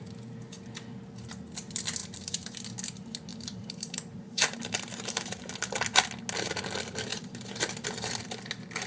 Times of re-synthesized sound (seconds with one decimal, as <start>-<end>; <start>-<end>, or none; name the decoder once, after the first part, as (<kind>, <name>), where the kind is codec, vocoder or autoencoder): 2.0-2.6 (vocoder, BigVGAN v2); 3.3-5.5; 7.1-7.9